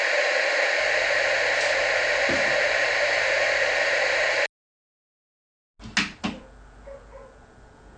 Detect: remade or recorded recorded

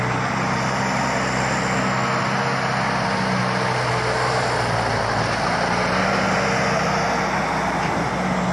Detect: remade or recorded recorded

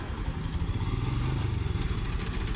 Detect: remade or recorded recorded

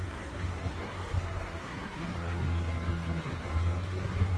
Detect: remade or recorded remade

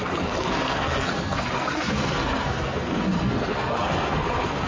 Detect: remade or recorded remade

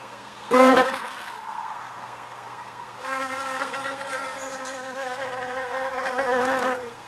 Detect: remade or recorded remade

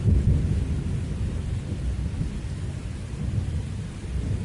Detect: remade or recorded recorded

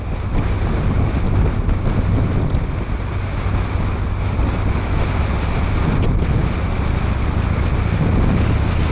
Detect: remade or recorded recorded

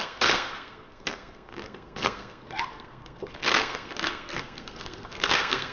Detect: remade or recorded remade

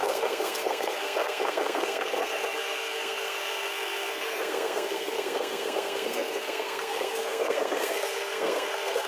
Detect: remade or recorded remade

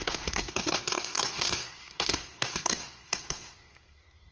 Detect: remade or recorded remade